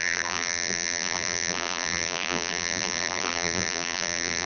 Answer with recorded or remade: remade